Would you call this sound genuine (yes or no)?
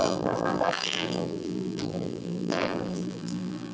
no